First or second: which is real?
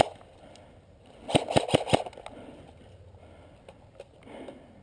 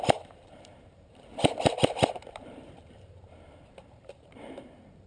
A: first